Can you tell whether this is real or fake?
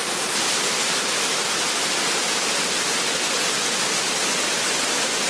real